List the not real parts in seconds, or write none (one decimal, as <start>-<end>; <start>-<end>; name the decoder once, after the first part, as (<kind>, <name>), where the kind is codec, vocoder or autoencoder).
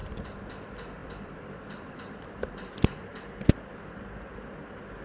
0.0-0.5 (vocoder, BigVGAN v2); 1.0-4.0